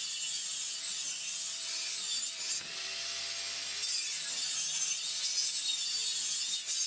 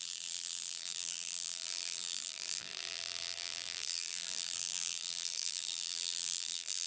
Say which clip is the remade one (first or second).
second